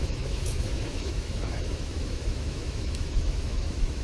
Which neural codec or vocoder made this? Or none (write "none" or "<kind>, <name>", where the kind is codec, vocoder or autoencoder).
autoencoder, DAC-VAE